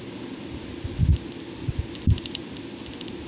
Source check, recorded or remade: recorded